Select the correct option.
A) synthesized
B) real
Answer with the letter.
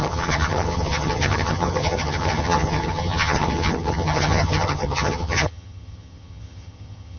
A